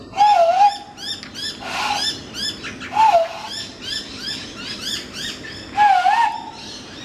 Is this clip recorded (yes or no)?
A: yes